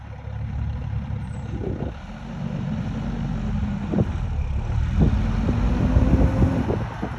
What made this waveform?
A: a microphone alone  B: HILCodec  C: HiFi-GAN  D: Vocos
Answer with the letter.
A